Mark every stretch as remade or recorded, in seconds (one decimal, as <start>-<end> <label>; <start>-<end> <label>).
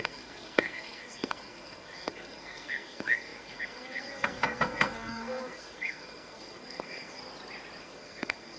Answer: 0.0-7.2 remade; 7.2-7.8 recorded; 7.8-8.6 remade